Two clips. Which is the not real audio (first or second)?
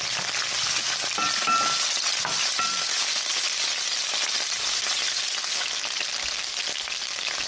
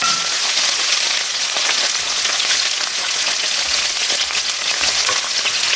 second